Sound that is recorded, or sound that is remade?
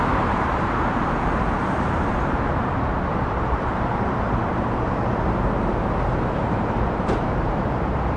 remade